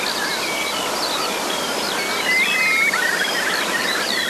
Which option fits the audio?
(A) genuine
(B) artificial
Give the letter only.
A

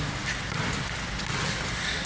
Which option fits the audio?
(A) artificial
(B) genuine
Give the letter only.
B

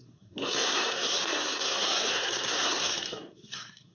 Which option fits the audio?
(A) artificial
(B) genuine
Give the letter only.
A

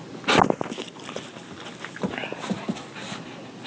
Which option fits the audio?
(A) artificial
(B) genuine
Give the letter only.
B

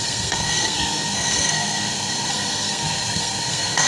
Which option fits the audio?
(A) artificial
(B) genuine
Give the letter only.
A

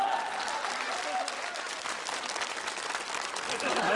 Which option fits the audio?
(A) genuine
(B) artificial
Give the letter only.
A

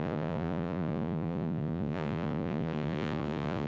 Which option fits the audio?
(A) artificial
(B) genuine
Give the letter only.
A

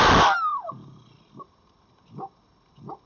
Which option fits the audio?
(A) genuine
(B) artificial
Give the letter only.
A